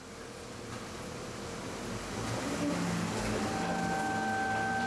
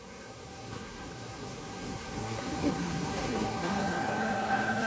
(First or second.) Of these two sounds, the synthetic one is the second